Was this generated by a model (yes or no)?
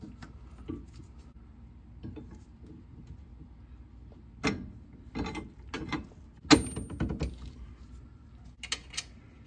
no